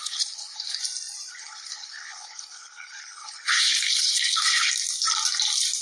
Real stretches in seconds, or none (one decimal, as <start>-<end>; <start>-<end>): 0.8-1.3; 4.7-5.8